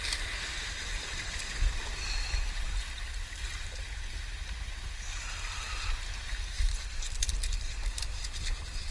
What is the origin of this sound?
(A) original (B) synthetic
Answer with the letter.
A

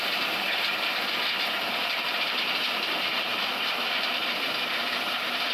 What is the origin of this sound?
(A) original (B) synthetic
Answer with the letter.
B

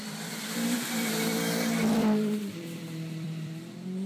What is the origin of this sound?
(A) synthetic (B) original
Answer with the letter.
A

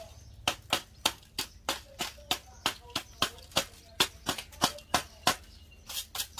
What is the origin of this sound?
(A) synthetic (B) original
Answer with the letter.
B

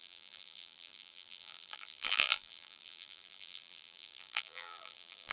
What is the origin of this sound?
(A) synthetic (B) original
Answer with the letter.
A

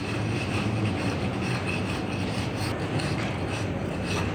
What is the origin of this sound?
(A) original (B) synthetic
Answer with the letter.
A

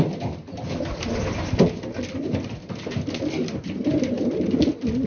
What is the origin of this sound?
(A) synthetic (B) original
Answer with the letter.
B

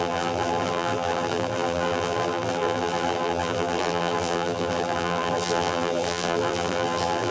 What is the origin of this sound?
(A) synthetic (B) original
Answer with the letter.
A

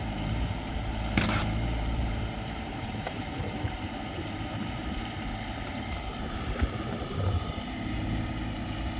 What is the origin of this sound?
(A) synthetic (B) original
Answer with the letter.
A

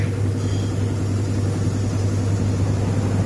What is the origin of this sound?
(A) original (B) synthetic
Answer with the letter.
A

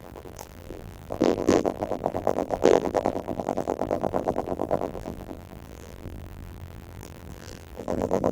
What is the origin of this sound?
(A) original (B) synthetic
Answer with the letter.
B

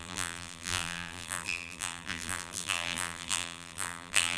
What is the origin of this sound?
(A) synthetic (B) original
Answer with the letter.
A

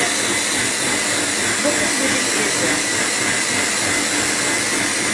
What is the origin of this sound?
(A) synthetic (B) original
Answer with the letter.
B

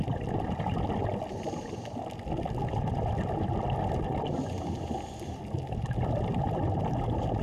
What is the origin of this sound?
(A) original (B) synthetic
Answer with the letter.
A